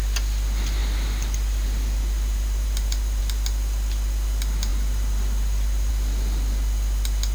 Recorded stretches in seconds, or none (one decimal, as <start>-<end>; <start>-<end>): 0.0-0.8; 3.2-4.7; 5.9-7.3